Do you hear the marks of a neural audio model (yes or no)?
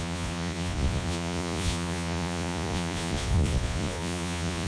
yes